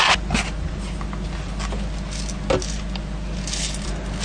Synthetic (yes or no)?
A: no